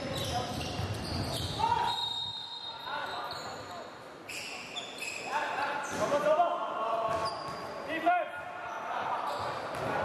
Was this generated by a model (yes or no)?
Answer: no